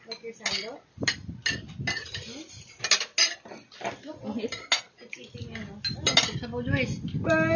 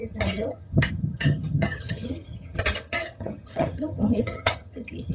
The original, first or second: first